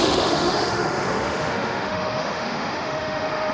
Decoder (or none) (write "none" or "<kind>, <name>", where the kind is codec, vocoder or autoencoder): autoencoder, DAC-VAE